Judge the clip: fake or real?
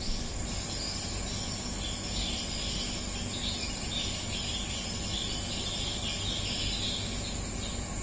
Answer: real